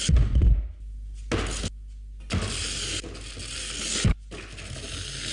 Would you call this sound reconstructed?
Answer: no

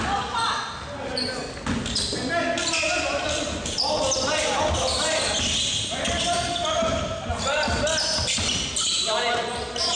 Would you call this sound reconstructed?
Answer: no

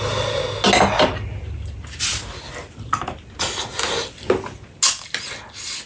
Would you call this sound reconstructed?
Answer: no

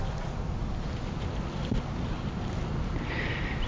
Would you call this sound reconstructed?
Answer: no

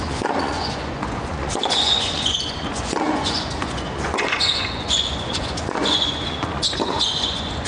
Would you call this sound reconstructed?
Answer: yes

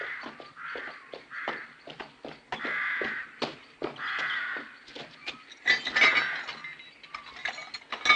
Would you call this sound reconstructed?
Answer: no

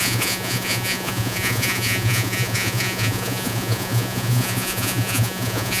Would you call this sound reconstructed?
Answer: yes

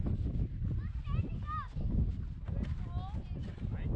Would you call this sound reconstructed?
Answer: no